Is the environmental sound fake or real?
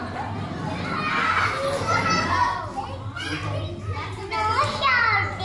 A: real